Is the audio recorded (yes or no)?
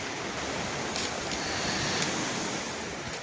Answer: yes